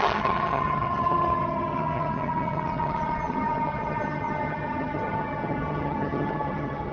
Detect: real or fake fake